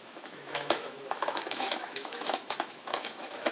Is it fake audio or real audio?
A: fake